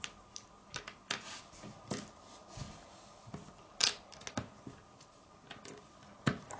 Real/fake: real